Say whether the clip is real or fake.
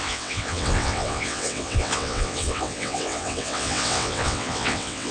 fake